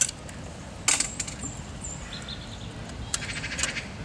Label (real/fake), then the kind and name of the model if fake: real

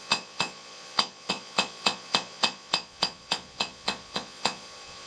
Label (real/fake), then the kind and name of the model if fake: fake, vocoder, Vocos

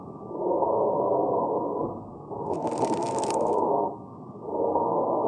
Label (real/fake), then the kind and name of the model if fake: fake, codec, SNAC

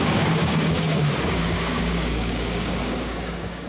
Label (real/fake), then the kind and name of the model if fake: fake, codec, DAC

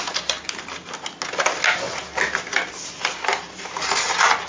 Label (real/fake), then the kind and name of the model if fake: real